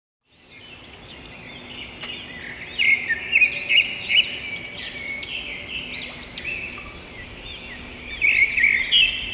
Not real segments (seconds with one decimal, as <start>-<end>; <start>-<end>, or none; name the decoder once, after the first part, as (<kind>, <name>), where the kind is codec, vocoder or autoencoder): none